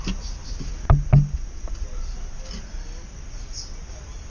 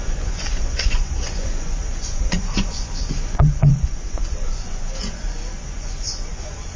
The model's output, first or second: second